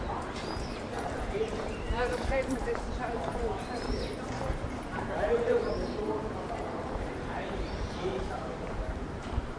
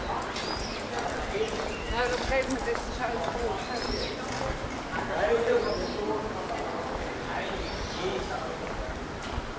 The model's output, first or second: first